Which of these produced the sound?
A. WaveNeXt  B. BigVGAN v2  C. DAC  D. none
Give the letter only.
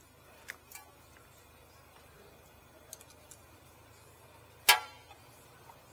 D